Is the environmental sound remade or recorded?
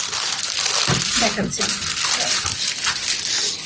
recorded